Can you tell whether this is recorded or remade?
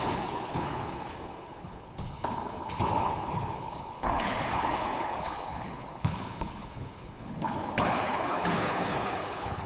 remade